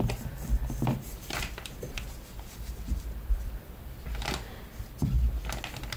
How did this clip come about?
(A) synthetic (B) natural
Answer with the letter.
B